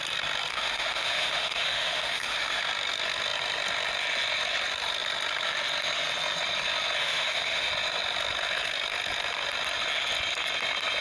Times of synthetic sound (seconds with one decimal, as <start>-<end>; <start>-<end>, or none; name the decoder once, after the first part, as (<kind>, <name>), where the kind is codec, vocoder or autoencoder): 0.5-2.6 (autoencoder, DAC-VAE); 7.0-7.7